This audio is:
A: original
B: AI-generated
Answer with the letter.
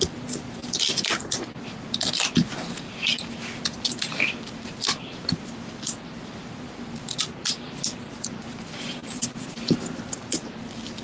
A